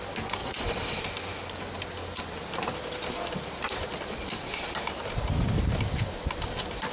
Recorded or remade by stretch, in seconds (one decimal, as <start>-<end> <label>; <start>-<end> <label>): 0.0-0.4 recorded; 0.4-1.0 remade; 1.0-6.9 recorded